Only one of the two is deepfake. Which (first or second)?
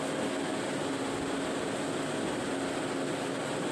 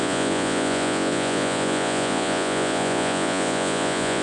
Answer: second